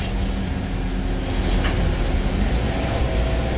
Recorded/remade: recorded